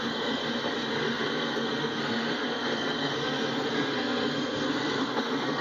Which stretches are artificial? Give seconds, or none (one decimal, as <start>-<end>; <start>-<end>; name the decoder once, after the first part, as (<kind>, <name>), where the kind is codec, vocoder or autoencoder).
0.0-0.4 (codec, SNAC); 0.9-5.6